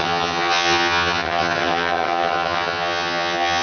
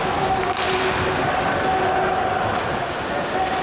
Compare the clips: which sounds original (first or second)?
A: second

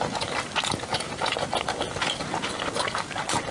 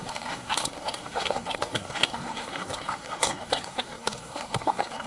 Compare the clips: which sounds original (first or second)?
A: first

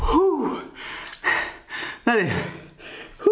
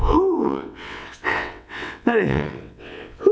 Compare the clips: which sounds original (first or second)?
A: first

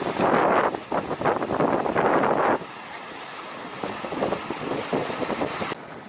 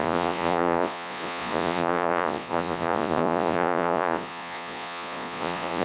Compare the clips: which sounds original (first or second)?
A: first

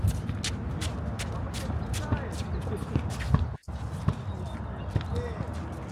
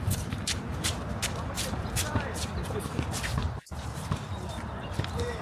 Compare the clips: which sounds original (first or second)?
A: first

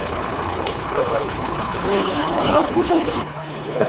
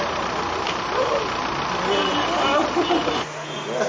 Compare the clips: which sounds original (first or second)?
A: second